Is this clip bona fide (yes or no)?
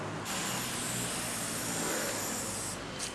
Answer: yes